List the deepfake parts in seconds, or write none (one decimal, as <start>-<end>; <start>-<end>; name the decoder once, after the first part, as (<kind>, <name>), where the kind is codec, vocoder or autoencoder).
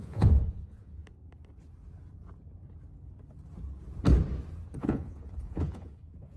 0.0-1.0 (vocoder, Vocos); 4.8-6.4